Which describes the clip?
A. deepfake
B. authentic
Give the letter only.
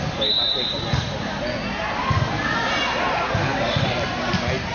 B